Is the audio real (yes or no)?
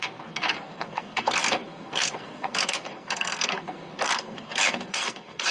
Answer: no